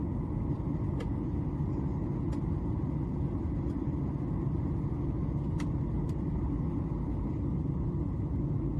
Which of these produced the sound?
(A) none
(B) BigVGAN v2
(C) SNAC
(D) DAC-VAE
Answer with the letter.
A